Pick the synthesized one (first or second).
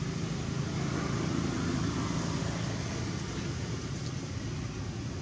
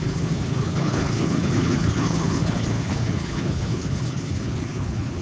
second